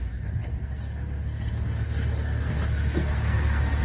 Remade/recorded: remade